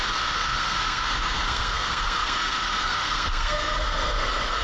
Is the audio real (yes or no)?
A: no